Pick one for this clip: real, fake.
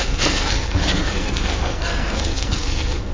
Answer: fake